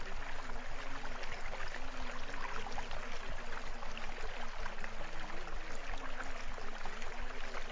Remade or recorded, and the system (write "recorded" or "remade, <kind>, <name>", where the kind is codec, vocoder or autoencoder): recorded